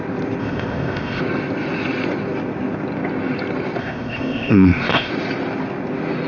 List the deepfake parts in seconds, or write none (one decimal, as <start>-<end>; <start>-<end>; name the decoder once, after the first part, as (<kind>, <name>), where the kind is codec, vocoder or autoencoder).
0.4-1.2 (codec, ZipCodec); 3.8-5.1